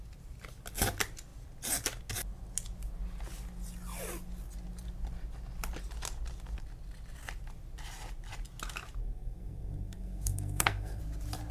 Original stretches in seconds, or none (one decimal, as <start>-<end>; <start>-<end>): 0.0-9.0; 11.0-11.5